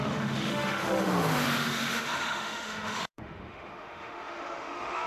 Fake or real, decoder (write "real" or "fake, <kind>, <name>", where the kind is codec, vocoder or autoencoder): fake, autoencoder, DAC-VAE